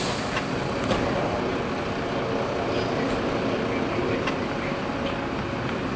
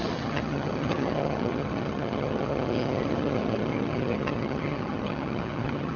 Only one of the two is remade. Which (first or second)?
second